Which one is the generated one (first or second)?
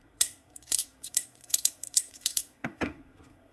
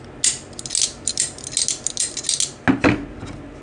first